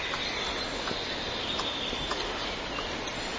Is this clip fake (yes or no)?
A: no